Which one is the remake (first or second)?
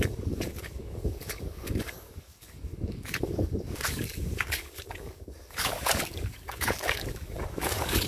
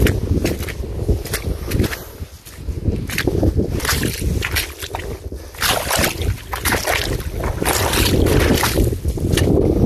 first